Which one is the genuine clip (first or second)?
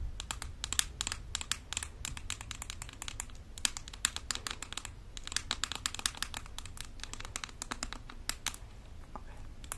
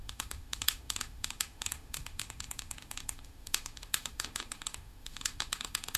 first